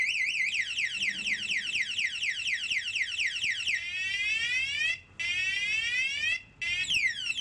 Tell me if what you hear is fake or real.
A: real